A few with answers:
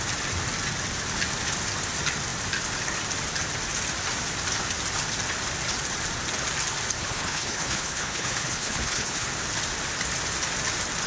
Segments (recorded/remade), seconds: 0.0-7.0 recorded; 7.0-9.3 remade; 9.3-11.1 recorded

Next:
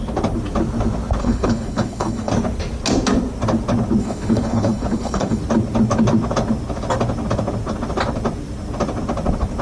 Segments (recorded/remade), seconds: 0.0-1.2 recorded; 1.2-2.3 remade; 2.3-4.0 recorded; 4.0-5.4 remade; 5.4-9.6 recorded

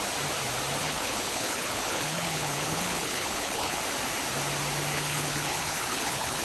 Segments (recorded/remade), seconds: 0.0-0.8 recorded; 0.8-3.8 remade; 3.8-4.9 recorded; 4.9-6.4 remade